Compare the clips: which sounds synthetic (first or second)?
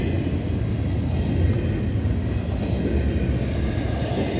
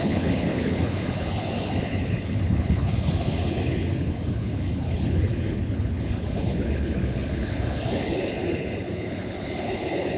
second